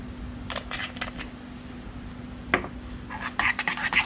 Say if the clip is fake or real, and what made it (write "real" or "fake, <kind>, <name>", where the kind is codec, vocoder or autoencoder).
real